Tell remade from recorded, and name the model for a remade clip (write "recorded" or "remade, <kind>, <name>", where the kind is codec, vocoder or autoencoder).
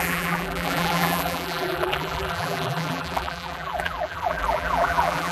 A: remade, vocoder, BigVGAN v2